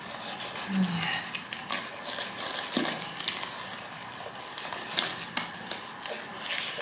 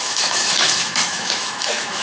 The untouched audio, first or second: first